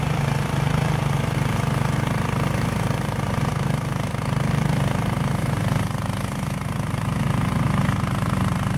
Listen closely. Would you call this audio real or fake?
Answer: real